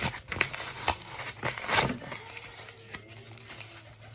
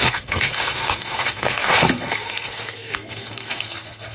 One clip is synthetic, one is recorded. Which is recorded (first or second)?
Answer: first